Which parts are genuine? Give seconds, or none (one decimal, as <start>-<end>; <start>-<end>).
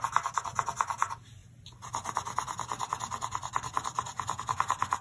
0.0-5.0